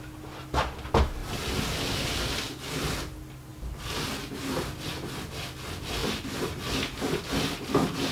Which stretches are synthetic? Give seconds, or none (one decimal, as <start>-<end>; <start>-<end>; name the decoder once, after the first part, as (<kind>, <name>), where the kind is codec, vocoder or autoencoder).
none